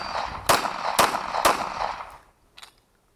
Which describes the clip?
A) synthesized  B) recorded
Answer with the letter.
B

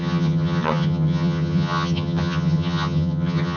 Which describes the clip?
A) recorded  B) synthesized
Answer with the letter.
B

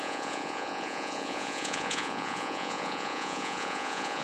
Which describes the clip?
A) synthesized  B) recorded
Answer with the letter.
A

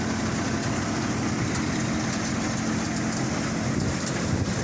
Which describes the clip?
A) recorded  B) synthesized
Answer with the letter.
A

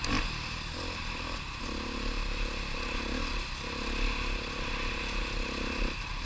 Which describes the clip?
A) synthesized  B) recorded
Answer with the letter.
B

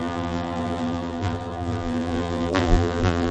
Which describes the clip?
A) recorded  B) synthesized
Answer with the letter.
B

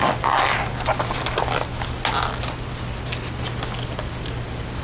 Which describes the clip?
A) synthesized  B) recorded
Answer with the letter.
B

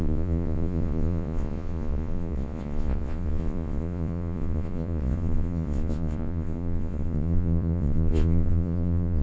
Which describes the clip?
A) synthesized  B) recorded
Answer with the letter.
A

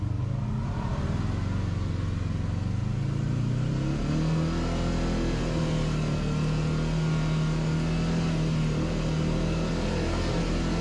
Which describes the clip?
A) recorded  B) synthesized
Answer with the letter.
A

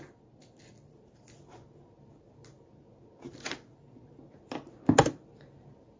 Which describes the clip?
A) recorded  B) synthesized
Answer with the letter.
A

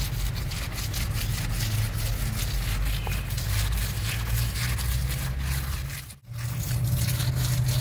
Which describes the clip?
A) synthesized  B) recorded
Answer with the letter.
B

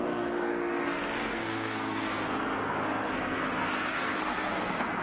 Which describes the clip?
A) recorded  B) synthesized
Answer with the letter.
B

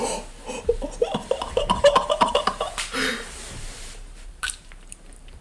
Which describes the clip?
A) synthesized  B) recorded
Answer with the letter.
A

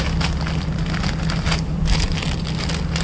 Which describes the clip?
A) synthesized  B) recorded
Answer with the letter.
B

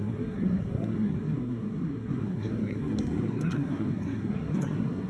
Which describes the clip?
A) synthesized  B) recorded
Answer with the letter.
A